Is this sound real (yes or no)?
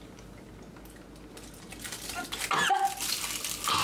yes